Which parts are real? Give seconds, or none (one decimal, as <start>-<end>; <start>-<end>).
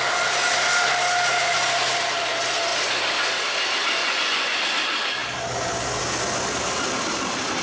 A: 0.0-4.0; 4.6-7.6